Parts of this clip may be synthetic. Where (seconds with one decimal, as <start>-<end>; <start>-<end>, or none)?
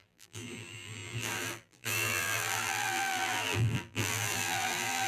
0.0-5.1